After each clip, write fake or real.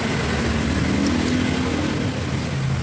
real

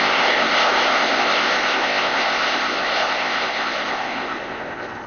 fake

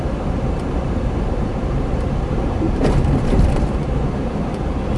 fake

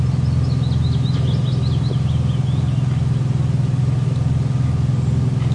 real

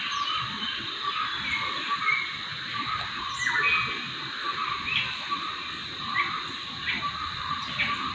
real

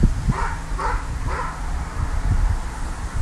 real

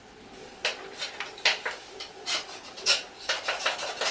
real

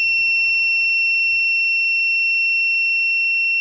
real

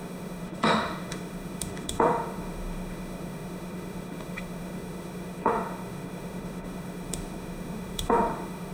fake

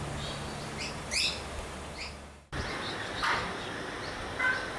real